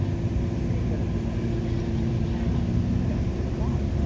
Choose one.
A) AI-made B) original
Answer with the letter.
B